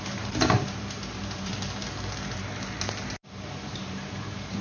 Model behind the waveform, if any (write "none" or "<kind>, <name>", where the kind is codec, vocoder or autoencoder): vocoder, BigVGAN v2